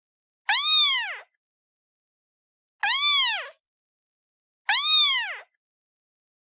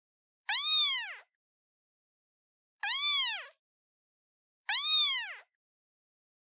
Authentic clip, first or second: first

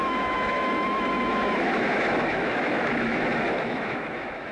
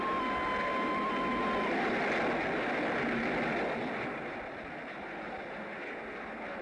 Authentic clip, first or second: second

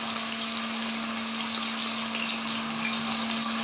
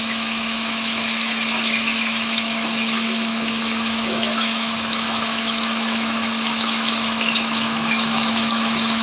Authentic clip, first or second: first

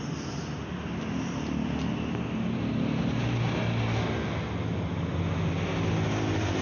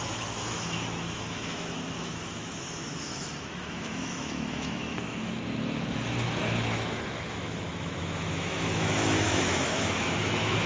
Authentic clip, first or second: first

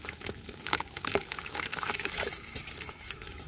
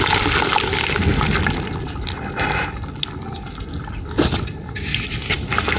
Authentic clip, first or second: second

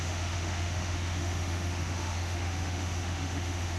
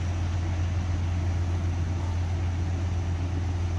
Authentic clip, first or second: second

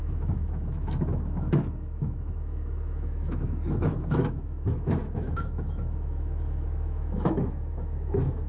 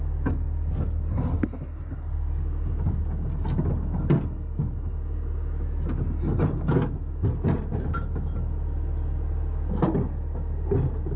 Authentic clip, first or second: second